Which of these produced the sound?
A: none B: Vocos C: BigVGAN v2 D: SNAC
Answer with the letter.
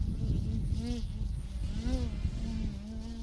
A